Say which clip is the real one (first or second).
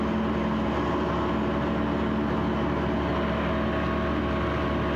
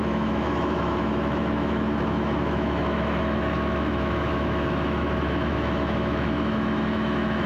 first